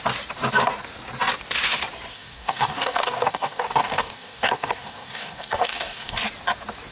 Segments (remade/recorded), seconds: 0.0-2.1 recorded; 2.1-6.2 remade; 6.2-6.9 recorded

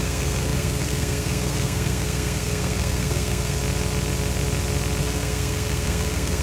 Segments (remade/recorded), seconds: 0.0-3.6 remade; 3.6-5.0 recorded; 5.0-6.4 remade

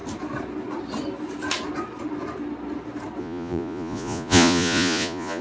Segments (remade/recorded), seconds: 0.0-3.2 recorded; 3.2-5.4 remade

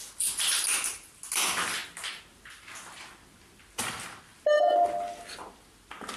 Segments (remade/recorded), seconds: 0.0-6.2 recorded

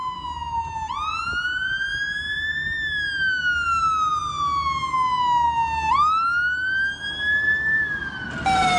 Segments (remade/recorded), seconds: 0.0-8.8 recorded

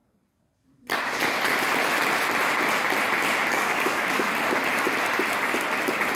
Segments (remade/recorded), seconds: 0.0-3.5 recorded; 3.5-4.3 remade; 4.3-6.2 recorded